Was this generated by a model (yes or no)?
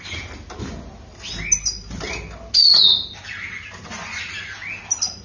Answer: no